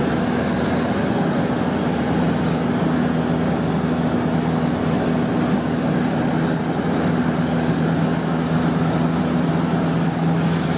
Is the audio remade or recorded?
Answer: recorded